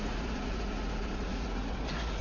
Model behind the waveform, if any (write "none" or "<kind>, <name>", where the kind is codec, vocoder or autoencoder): vocoder, Vocos